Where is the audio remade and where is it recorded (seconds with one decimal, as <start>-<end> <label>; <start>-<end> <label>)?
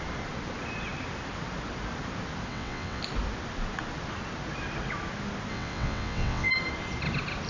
0.0-2.5 recorded; 2.5-3.0 remade; 3.0-5.5 recorded; 5.5-6.5 remade; 6.5-7.5 recorded